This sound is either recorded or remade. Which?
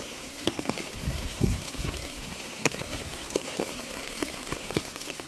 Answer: remade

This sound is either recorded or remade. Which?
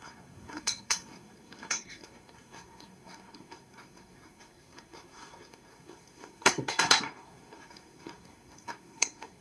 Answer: remade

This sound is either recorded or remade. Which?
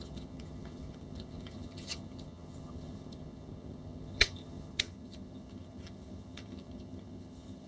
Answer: remade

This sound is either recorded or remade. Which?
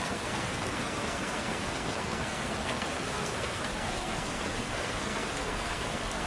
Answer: remade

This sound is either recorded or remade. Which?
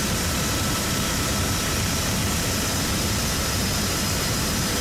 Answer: remade